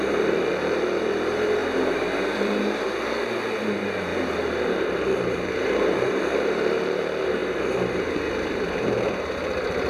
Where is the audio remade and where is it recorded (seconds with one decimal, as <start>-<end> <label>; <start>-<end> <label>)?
0.0-7.4 remade; 7.4-8.3 recorded; 8.3-9.9 remade